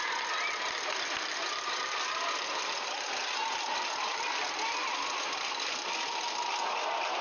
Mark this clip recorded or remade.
recorded